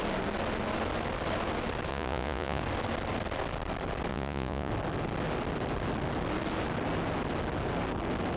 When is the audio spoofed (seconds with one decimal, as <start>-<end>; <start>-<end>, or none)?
1.9-2.6; 4.1-4.7